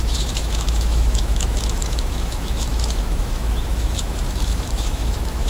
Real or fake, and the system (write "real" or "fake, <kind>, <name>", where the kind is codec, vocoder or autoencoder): fake, autoencoder, DAC-VAE